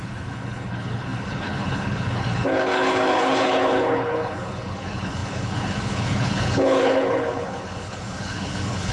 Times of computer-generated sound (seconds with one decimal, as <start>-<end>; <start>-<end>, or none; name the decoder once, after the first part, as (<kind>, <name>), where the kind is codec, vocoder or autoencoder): 0.0-8.9 (codec, HILCodec)